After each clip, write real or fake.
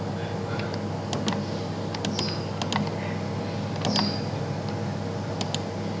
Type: real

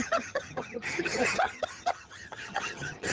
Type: fake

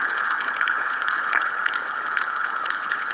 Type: fake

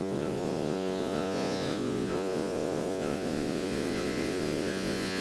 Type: fake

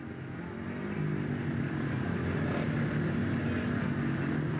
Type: real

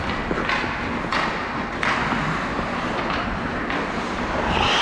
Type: real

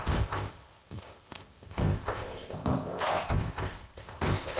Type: fake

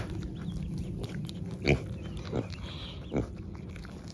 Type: real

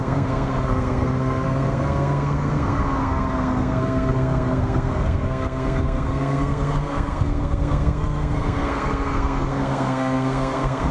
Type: fake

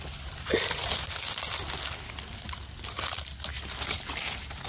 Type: real